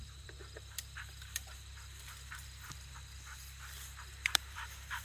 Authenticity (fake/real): fake